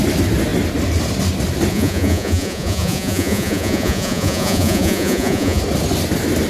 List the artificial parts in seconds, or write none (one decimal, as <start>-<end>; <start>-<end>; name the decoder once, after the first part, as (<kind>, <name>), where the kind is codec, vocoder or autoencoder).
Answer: 1.7-5.6 (vocoder, Vocos)

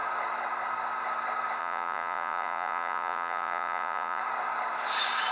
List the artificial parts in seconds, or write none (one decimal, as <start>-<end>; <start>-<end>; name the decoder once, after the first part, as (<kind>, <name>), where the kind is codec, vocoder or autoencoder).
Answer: 1.6-4.2 (vocoder, Vocos)